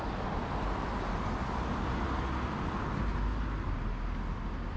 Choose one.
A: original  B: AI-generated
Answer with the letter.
A